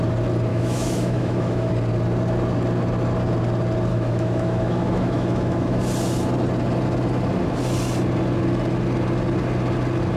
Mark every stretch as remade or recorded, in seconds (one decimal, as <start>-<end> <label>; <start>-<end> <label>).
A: 0.0-0.5 recorded; 0.5-1.7 remade; 1.7-3.9 recorded; 3.9-5.8 remade; 5.8-10.2 recorded